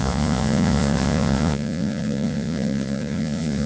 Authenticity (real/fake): fake